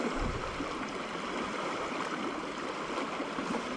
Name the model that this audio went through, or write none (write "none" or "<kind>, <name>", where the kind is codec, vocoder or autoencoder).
none